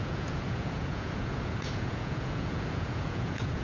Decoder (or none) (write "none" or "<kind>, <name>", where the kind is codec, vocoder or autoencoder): vocoder, Vocos